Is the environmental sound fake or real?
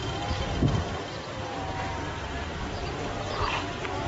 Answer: fake